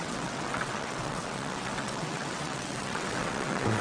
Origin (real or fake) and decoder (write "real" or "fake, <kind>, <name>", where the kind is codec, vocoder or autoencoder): fake, vocoder, WaveNeXt